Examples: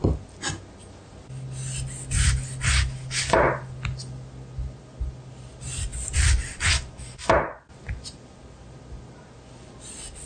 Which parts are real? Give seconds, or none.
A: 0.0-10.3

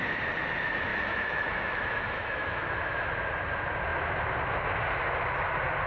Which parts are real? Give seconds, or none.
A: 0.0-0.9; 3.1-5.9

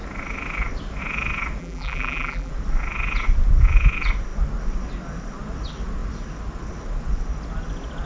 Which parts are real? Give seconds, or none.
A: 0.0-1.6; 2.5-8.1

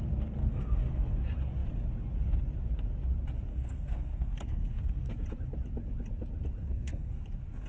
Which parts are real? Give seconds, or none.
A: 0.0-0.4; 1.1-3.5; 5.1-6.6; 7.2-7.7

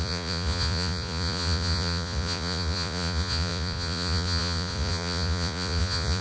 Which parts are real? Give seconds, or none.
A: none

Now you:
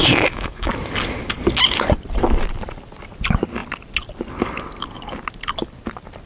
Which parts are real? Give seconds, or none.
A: 0.7-6.3

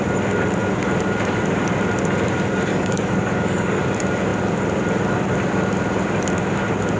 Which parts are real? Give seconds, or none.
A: 0.0-2.7; 3.8-7.0